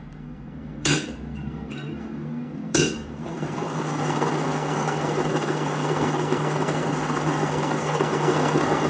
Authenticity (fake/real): fake